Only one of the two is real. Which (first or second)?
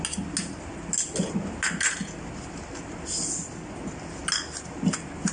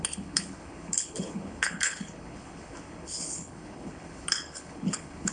first